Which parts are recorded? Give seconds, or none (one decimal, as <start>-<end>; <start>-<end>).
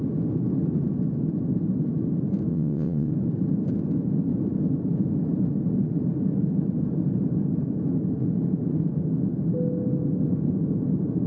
0.0-2.5; 3.1-11.3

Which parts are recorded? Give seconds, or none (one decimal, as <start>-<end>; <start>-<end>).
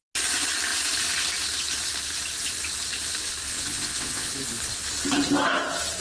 0.0-3.5; 4.3-6.0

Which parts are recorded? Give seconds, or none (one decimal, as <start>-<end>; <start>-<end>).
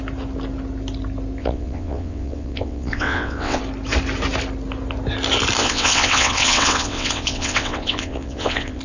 0.0-1.4; 3.6-5.6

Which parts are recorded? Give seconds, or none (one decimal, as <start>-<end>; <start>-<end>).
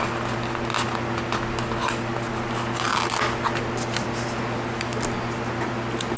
0.0-6.2